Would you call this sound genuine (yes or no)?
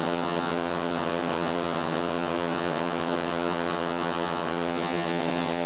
no